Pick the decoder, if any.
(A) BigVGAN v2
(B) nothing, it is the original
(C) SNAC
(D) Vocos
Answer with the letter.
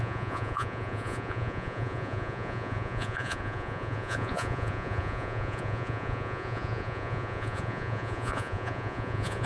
D